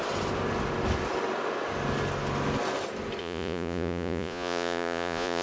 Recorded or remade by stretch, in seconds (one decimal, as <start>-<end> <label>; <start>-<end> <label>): 0.0-3.2 recorded; 3.2-5.4 remade